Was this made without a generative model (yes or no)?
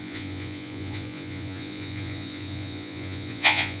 no